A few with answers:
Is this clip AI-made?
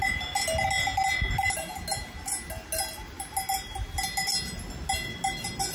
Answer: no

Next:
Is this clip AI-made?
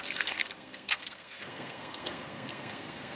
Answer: yes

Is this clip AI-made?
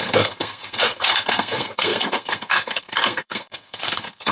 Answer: yes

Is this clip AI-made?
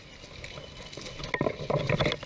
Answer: no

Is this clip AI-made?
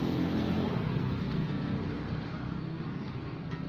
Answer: yes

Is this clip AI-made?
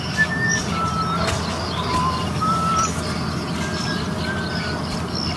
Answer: no